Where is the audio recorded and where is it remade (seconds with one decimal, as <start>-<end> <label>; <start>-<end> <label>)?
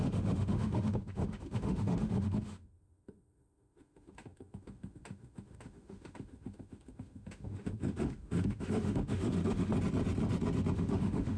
0.0-9.7 remade; 9.7-10.7 recorded; 10.7-11.4 remade